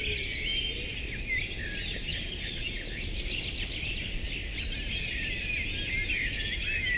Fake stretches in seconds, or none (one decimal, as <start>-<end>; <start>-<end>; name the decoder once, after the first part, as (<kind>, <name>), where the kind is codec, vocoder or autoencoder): none